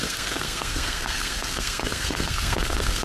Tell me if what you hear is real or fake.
fake